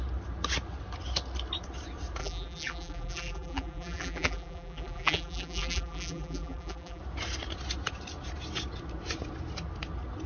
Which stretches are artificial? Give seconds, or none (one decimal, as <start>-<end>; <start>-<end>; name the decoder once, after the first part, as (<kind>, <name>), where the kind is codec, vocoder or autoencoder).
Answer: 2.2-7.0 (vocoder, BigVGAN v2)